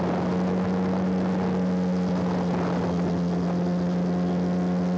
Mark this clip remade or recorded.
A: recorded